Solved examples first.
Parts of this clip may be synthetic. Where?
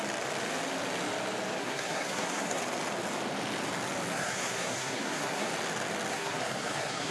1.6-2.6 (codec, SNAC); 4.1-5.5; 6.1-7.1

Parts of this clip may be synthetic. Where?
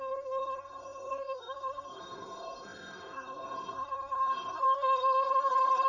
0.0-5.9 (codec, SNAC)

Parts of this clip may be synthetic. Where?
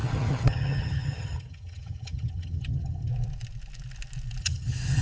0.0-3.1 (vocoder, HiFi-GAN); 4.4-5.0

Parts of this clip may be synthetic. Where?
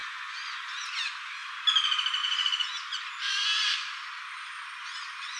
0.0-1.0 (vocoder, Vocos); 2.2-3.0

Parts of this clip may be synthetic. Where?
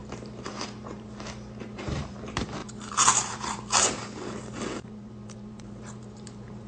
0.0-6.7 (vocoder, BigVGAN v2)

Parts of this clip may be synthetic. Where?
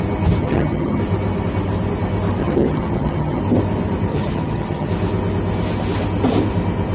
0.4-1.0 (vocoder, HiFi-GAN); 2.4-3.4; 4.1-4.9